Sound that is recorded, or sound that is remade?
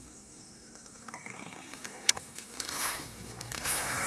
remade